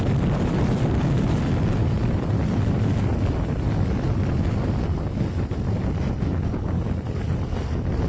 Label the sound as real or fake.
real